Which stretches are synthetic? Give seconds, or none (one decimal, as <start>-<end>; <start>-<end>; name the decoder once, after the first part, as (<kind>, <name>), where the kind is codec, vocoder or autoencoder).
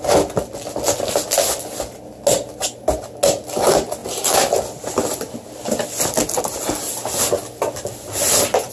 none